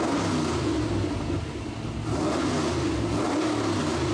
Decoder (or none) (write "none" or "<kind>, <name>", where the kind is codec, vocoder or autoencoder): none